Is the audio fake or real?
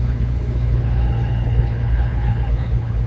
fake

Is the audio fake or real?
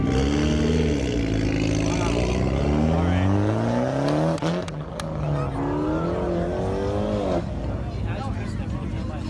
real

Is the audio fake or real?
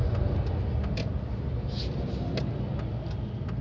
real